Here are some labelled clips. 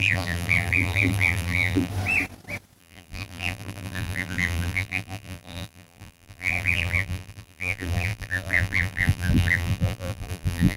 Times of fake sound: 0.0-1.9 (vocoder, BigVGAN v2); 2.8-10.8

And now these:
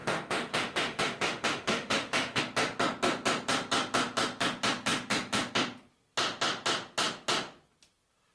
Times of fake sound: 0.0-2.4 (autoencoder, DAC-VAE)

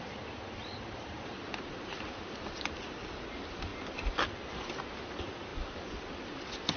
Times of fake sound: none

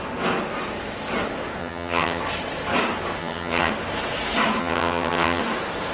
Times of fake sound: 1.6-2.2 (vocoder, HiFi-GAN); 3.2-3.7; 4.6-5.4

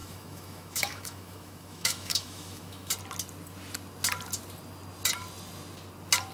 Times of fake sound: 0.0-2.9 (autoencoder, DAC-VAE)